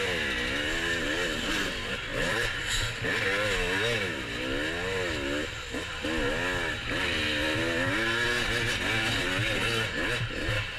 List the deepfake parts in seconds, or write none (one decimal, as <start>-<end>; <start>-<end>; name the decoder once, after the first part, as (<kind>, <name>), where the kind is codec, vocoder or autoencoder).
2.1-2.9 (vocoder, BigVGAN v2)